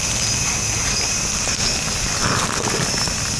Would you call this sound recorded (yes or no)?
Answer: yes